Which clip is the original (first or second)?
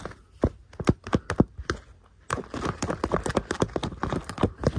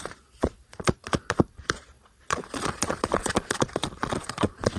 first